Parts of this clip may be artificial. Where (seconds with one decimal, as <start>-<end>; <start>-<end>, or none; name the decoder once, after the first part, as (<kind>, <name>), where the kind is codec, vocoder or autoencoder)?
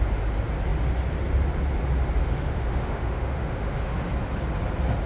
2.2-4.1 (autoencoder, DAC-VAE)